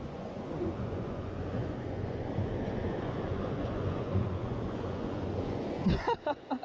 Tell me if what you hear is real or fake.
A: fake